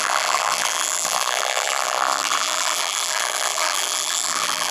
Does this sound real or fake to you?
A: fake